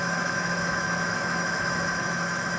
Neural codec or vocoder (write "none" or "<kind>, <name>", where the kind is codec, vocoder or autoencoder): autoencoder, DAC-VAE